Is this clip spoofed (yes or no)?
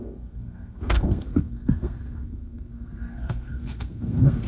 yes